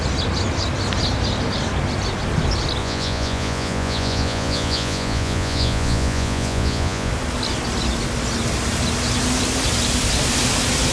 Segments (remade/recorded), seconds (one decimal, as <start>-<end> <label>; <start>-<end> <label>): 0.0-2.8 recorded; 2.8-7.1 remade; 7.1-10.9 recorded